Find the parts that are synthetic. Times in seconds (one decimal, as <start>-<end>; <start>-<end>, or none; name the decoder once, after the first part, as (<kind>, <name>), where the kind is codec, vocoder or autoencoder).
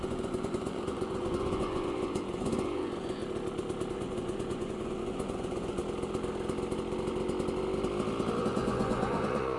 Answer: 0.0-3.2 (vocoder, Vocos); 3.9-5.8; 8.4-9.6